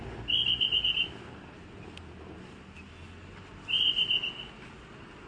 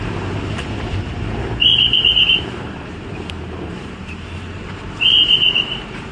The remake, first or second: second